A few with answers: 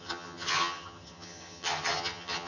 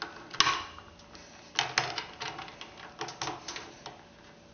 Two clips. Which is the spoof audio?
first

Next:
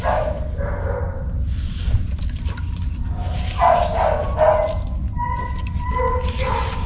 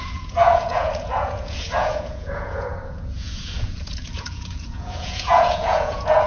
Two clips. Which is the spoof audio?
second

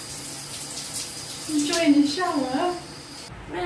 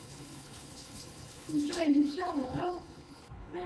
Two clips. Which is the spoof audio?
second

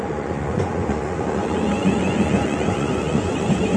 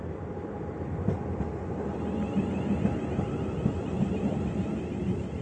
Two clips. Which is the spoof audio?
first